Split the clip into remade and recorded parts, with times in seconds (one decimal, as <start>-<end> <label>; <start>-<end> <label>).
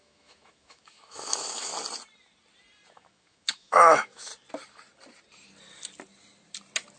0.0-1.7 remade; 1.7-2.9 recorded; 2.9-4.3 remade; 4.3-7.0 recorded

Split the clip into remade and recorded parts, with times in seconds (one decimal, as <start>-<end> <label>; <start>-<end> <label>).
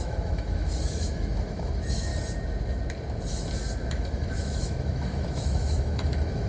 0.0-2.1 remade; 2.1-3.9 recorded; 3.9-6.5 remade